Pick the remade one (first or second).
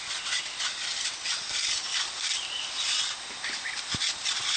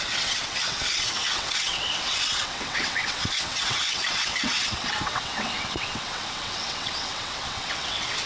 second